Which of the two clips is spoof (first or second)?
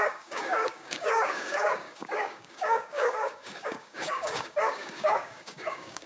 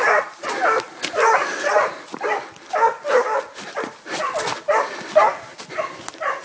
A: first